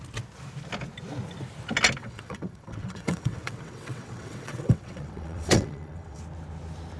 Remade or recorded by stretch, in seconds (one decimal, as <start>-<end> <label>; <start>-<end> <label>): 0.0-2.0 recorded; 2.0-6.2 remade; 6.2-7.0 recorded